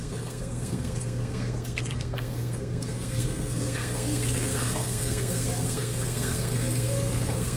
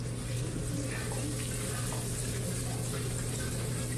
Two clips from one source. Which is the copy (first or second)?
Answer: first